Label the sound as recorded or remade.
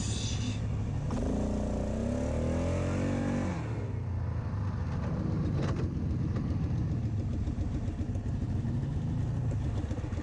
recorded